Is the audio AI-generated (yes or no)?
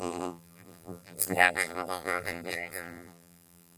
yes